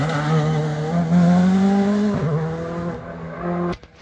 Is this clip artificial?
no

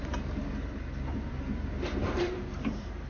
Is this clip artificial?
yes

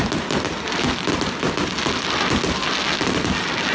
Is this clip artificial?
no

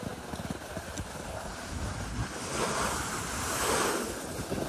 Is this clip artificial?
no